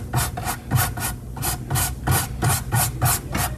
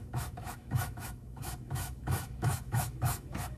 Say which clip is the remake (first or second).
second